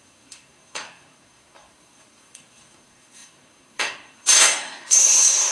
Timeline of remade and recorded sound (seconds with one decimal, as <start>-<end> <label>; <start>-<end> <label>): 0.0-5.5 remade